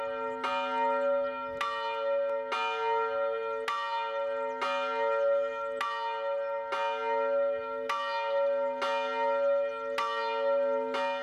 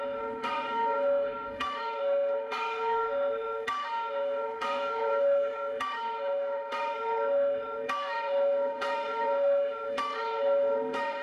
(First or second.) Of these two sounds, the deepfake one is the second